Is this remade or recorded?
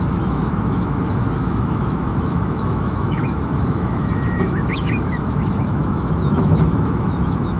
remade